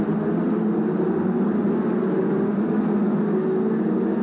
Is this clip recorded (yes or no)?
yes